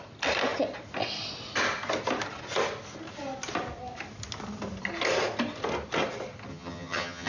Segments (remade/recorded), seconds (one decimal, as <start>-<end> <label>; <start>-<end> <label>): 0.0-6.5 recorded; 6.5-7.3 remade